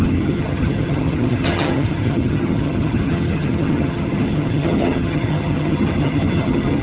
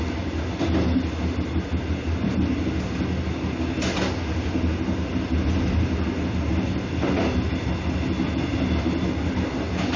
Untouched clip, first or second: second